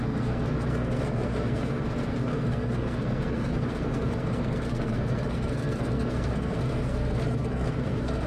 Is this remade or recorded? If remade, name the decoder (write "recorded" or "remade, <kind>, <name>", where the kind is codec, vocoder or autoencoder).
remade, codec, SNAC